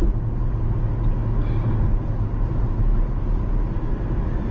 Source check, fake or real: real